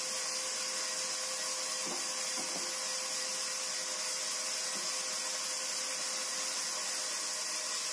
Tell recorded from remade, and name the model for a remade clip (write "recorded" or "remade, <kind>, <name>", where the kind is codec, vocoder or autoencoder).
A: recorded